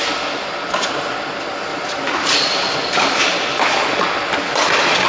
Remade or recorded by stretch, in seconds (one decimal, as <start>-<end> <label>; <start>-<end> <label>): 0.0-1.7 recorded; 1.7-2.3 remade; 2.3-5.1 recorded